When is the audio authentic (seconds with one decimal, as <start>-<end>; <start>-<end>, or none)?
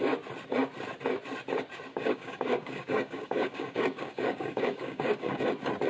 0.0-1.9; 5.4-5.9